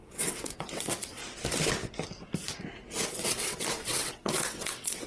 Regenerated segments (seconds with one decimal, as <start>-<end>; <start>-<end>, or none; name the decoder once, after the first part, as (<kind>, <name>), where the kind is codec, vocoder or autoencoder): 0.0-1.2 (vocoder, WaveNeXt); 3.1-5.1